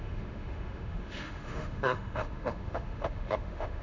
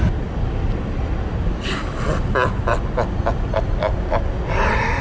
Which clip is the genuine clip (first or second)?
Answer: second